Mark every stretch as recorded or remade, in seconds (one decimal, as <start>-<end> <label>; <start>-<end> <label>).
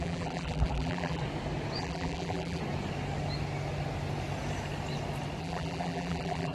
0.0-1.2 remade; 1.2-1.8 recorded; 1.8-2.6 remade; 2.6-5.4 recorded; 5.4-6.5 remade